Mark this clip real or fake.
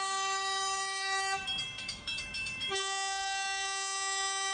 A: fake